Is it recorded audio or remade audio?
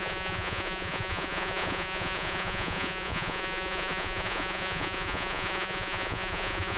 remade